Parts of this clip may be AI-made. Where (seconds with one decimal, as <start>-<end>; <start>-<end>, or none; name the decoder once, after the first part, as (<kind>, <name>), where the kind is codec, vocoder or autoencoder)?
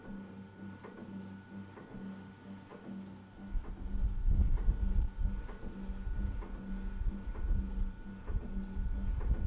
none